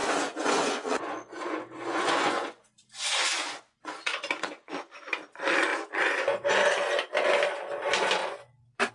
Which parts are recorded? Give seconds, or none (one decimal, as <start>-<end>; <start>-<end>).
4.7-5.7; 6.5-8.2